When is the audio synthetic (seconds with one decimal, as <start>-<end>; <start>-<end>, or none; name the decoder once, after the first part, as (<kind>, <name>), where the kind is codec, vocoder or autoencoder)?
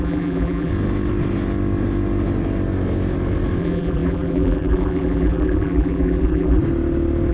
0.0-0.7 (vocoder, BigVGAN v2); 3.6-6.6